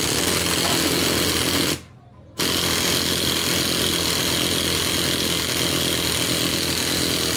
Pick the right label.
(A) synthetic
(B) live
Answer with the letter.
B